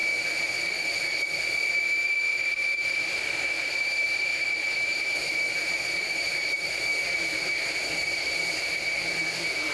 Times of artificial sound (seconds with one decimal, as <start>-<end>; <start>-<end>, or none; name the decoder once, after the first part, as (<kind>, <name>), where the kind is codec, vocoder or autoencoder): 1.7-9.7 (vocoder, BigVGAN v2)